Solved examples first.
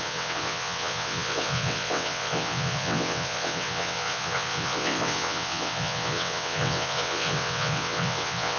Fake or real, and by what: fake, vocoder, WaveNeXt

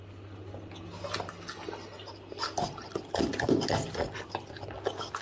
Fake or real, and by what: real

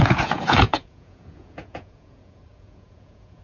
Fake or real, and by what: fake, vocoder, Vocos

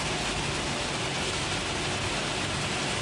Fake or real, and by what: real